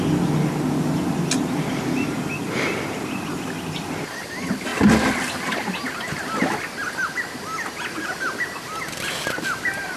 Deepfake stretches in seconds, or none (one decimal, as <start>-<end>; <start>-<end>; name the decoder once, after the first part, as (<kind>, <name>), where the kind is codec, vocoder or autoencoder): none